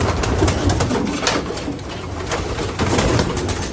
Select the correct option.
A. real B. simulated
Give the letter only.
A